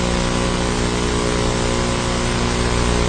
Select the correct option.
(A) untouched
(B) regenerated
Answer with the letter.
A